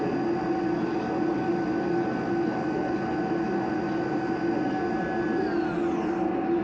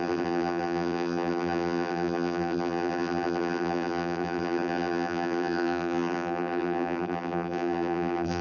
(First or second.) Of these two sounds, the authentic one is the first